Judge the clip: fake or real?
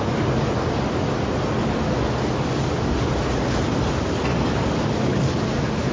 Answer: real